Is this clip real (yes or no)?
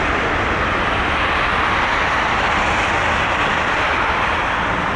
yes